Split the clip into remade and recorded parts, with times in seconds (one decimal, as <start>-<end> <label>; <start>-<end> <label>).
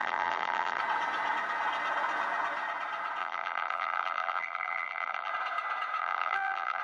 0.0-0.8 remade; 0.8-3.2 recorded; 3.2-5.3 remade; 5.3-6.0 recorded; 6.0-6.8 remade